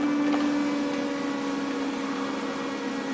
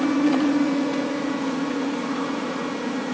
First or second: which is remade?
second